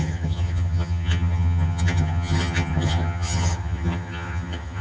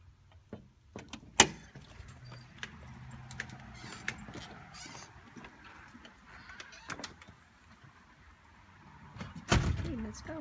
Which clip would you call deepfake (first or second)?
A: first